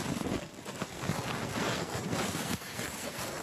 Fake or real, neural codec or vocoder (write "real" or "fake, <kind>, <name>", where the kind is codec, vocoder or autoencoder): fake, codec, SNAC